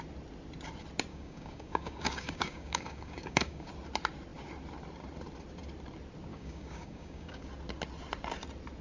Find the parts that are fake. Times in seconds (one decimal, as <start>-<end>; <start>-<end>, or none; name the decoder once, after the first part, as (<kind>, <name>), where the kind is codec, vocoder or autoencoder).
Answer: 1.1-3.7 (codec, DAC); 6.3-7.5